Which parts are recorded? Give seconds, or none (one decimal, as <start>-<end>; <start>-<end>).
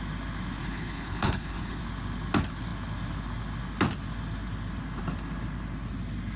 0.0-0.6; 1.8-6.4